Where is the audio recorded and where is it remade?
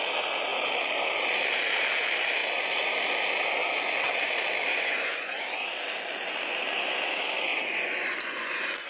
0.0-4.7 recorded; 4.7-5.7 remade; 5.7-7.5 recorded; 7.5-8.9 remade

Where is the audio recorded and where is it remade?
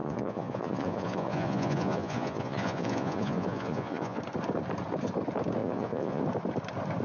0.0-4.2 remade; 4.2-5.6 recorded; 5.6-6.2 remade; 6.2-7.0 recorded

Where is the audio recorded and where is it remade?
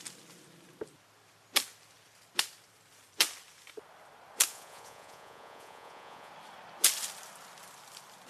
0.0-4.5 recorded; 4.5-6.3 remade; 6.3-8.3 recorded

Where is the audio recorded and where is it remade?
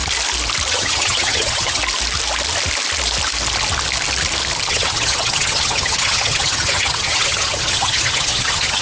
0.0-0.7 recorded; 0.7-1.8 remade; 1.8-4.7 recorded; 4.7-8.8 remade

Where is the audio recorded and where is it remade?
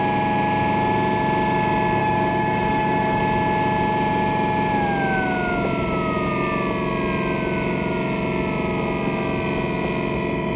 0.0-2.0 recorded; 2.0-3.2 remade; 3.2-10.6 recorded